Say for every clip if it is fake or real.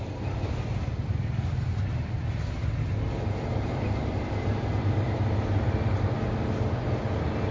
real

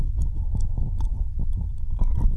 real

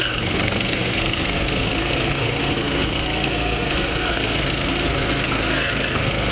fake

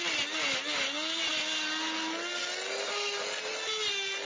real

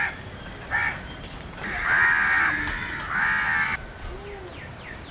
real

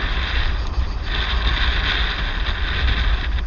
real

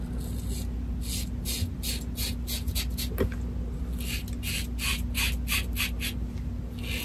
real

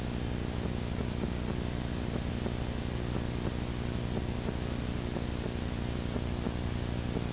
real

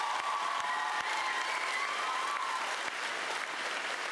real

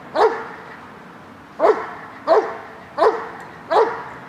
real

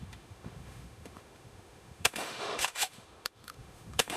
fake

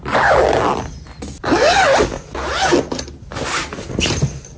real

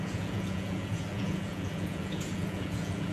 fake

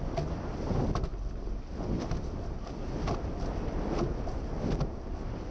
real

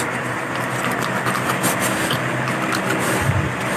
real